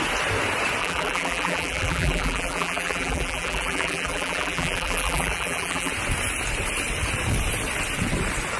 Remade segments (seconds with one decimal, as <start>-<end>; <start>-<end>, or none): 0.8-5.9